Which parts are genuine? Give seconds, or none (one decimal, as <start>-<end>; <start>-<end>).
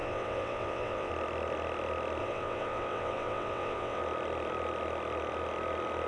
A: 1.1-2.2; 4.0-6.1